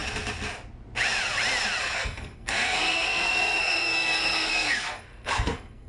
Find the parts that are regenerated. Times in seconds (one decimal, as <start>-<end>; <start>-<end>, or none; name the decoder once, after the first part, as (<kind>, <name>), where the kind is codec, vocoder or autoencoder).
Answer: 1.8-5.9 (codec, SNAC)